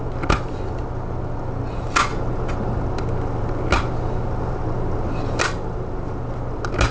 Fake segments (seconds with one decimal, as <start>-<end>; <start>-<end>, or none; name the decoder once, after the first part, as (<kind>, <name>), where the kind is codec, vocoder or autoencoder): none